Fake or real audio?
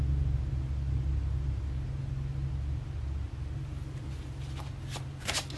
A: real